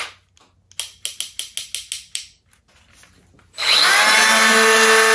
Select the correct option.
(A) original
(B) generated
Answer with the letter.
A